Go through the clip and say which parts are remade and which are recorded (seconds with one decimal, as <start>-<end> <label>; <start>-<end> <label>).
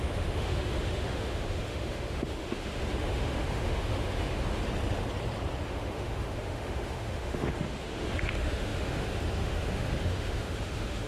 0.0-4.6 remade; 4.6-5.6 recorded; 5.6-11.1 remade